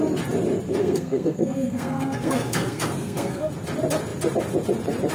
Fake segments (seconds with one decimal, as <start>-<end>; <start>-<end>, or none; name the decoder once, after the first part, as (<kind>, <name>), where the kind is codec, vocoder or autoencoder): 0.8-3.5 (codec, SNAC)